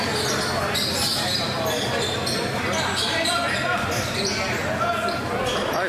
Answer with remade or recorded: recorded